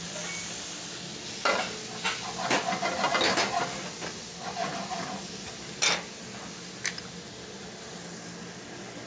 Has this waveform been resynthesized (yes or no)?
no